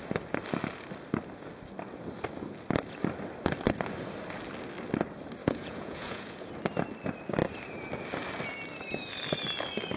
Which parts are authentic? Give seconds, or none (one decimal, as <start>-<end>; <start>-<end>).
0.0-5.4; 6.5-10.0